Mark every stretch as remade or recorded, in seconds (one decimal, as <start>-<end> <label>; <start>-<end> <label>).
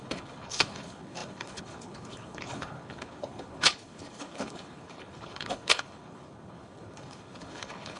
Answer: 0.0-8.0 remade